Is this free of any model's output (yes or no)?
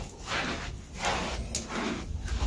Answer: yes